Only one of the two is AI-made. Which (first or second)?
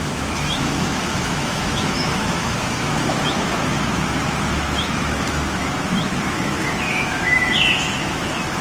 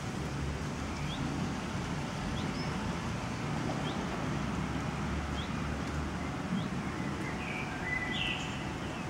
first